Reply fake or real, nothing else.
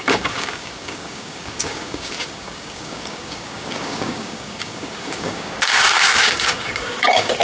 fake